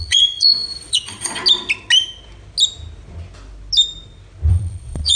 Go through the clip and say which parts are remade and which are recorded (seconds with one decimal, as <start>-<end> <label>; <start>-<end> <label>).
0.0-1.4 remade; 1.4-4.5 recorded; 4.5-5.2 remade